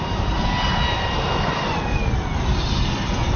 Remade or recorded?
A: recorded